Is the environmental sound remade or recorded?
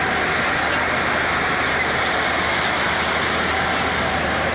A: recorded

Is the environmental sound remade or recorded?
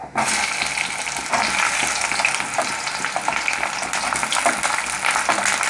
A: recorded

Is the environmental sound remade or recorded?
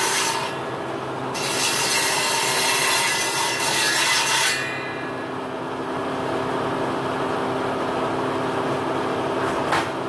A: recorded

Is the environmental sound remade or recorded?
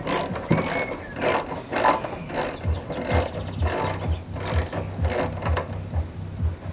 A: recorded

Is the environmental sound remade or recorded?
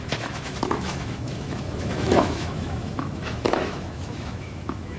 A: remade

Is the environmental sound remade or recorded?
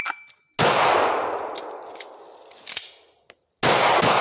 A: recorded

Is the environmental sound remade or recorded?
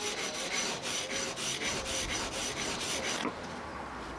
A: recorded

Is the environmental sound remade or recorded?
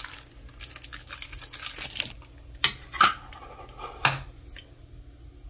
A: recorded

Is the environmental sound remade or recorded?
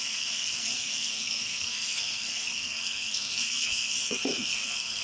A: remade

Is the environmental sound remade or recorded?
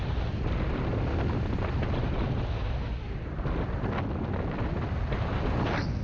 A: recorded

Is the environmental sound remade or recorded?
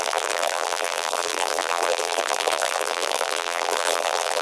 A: remade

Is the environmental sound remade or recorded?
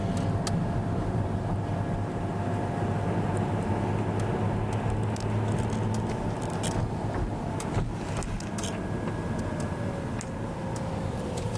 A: recorded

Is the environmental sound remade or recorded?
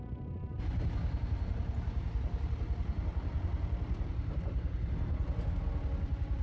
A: recorded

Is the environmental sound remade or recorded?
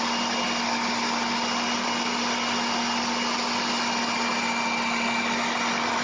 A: recorded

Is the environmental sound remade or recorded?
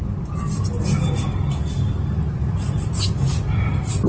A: recorded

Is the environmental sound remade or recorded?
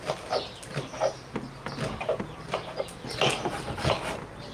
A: recorded